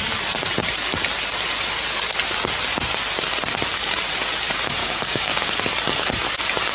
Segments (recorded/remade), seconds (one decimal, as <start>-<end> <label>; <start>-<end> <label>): 0.0-4.8 recorded; 4.8-5.5 remade; 5.5-6.7 recorded